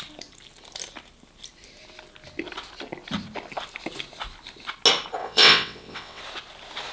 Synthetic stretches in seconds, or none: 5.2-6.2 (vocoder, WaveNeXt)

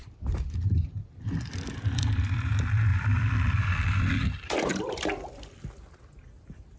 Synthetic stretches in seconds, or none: 0.0-2.5 (vocoder, BigVGAN v2); 2.9-4.1; 4.7-5.4

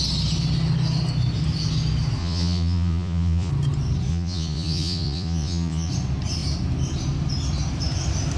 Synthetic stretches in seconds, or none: 2.2-3.5 (vocoder, Vocos); 4.1-5.9